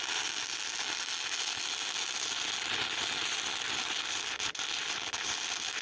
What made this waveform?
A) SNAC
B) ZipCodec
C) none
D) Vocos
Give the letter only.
C